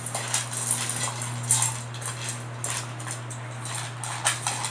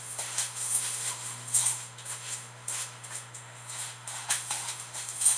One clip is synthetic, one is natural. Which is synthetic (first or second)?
second